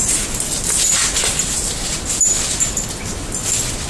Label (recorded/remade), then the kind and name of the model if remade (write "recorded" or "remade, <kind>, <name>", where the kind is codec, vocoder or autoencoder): recorded